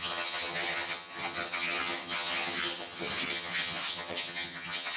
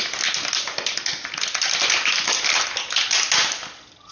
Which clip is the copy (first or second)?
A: first